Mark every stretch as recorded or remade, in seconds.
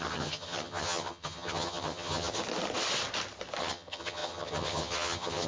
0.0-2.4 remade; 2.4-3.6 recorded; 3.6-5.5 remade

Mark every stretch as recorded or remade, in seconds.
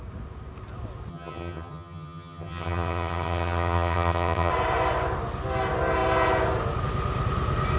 0.0-1.1 recorded; 1.1-4.5 remade; 4.5-7.8 recorded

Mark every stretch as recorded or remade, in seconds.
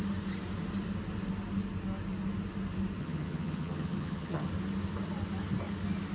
0.0-3.0 recorded; 3.0-4.5 remade; 4.5-6.1 recorded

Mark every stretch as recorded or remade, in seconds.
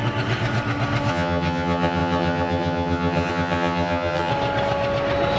0.0-1.1 recorded; 1.1-4.3 remade; 4.3-5.4 recorded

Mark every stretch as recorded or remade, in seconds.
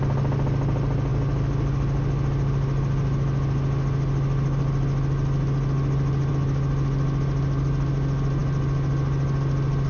0.0-9.9 recorded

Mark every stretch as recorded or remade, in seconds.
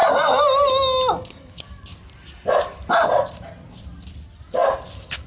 0.0-5.3 recorded